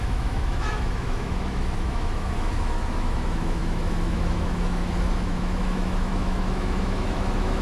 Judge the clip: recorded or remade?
remade